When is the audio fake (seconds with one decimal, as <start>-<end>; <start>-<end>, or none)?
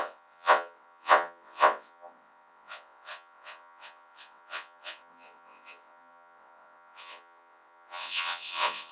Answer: 0.0-8.9